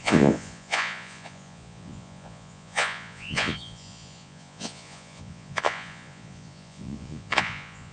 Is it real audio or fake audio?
fake